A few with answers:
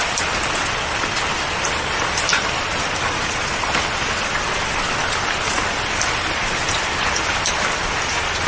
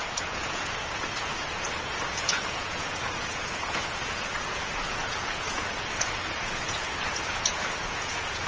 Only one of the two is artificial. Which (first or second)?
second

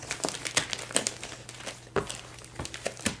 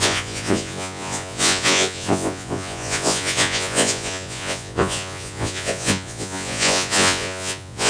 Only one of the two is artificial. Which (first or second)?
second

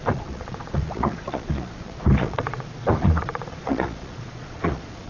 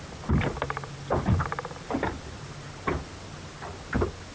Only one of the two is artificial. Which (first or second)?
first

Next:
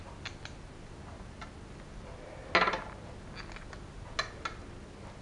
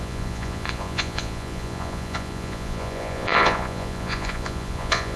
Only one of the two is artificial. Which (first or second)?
second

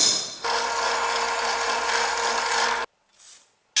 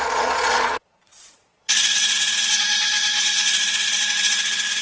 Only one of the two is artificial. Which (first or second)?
second